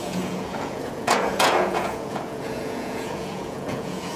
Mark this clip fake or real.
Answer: fake